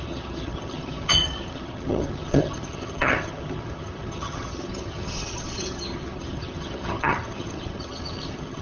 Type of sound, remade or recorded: remade